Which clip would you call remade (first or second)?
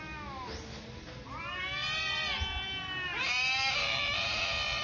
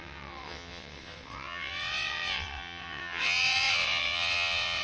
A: second